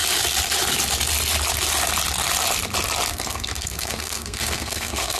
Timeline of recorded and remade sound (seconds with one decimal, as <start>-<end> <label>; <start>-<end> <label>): 0.0-3.1 recorded; 3.1-5.2 remade